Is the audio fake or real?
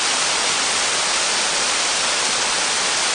real